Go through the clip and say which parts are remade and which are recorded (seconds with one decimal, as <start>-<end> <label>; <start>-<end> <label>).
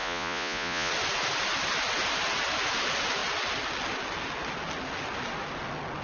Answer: 0.0-0.9 remade; 0.9-6.0 recorded